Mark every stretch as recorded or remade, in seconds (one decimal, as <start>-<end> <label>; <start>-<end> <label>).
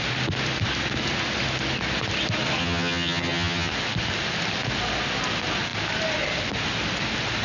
0.0-2.6 recorded; 2.6-3.7 remade; 3.7-7.4 recorded